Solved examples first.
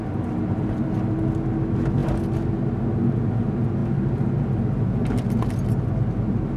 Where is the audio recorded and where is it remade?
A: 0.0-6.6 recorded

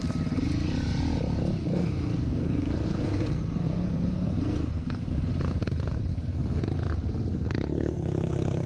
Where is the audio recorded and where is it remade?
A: 0.0-1.7 recorded; 1.7-5.3 remade; 5.3-6.1 recorded; 6.1-6.6 remade; 6.6-7.3 recorded; 7.3-8.7 remade

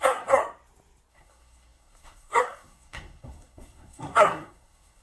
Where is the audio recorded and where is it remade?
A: 0.0-0.4 remade; 0.4-1.1 recorded; 1.1-5.0 remade

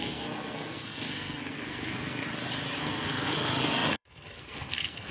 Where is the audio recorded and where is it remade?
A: 0.0-2.2 remade; 2.2-2.8 recorded; 2.8-5.1 remade

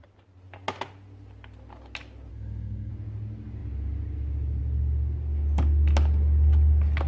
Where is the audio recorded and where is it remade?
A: 0.0-2.3 recorded; 2.3-2.9 remade; 2.9-7.1 recorded